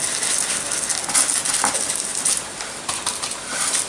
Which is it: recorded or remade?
recorded